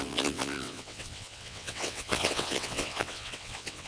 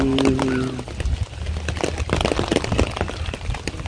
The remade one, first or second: first